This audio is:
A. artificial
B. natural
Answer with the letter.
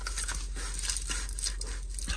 B